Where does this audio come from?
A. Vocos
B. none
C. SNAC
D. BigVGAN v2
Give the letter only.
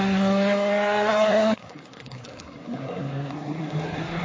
C